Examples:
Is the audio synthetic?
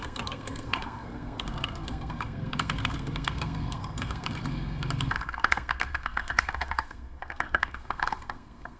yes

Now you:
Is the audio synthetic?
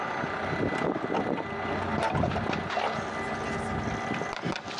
no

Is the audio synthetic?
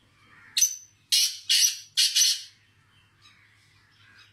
no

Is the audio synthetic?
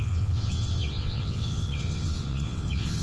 yes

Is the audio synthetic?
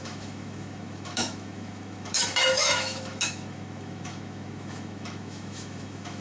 yes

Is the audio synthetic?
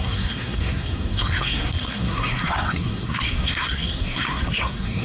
yes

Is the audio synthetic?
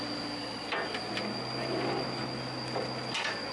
no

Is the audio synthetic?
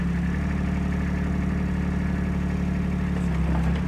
no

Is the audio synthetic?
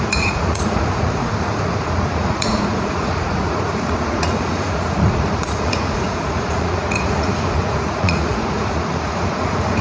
yes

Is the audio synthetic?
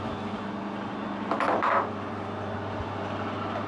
no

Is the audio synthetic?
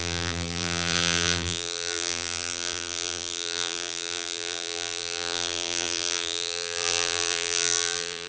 yes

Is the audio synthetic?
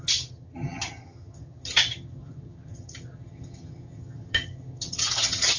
yes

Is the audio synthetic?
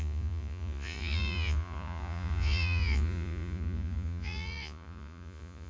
yes